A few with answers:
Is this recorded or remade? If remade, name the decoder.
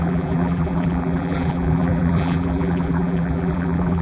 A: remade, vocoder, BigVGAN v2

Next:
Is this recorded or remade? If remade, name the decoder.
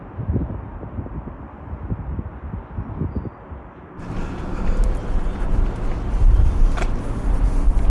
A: recorded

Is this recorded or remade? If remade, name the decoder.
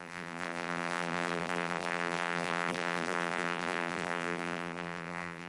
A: remade, vocoder, BigVGAN v2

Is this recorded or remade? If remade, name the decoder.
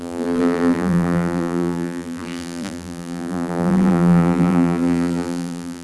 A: remade, vocoder, BigVGAN v2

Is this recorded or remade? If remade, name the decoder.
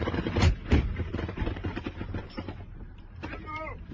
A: remade, vocoder, BigVGAN v2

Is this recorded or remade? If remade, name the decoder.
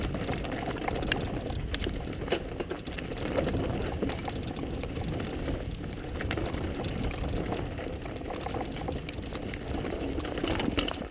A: recorded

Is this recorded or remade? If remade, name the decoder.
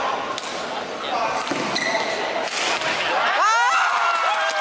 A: recorded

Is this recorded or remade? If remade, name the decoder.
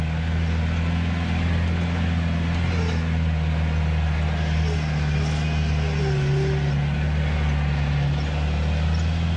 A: recorded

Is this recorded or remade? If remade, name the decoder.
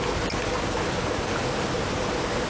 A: recorded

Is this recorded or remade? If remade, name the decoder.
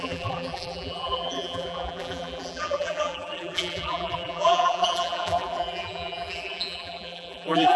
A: remade, vocoder, BigVGAN v2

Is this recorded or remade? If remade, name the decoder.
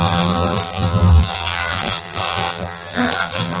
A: remade, vocoder, BigVGAN v2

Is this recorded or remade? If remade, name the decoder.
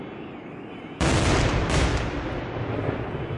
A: recorded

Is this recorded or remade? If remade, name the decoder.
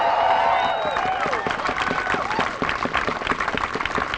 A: recorded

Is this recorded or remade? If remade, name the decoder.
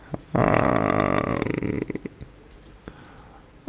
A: remade, vocoder, BigVGAN v2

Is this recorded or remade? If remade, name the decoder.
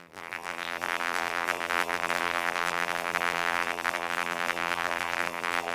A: remade, vocoder, BigVGAN v2